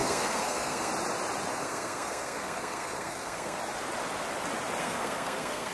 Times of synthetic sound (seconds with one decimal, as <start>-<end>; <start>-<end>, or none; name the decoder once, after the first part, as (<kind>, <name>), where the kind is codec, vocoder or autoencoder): 0.0-0.9 (codec, SNAC); 1.5-3.6; 4.8-5.7